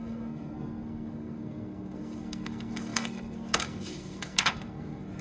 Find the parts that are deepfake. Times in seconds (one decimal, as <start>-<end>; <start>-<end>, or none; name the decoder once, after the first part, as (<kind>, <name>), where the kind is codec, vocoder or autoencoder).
0.0-5.2 (codec, SNAC)